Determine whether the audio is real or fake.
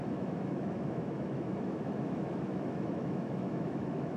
fake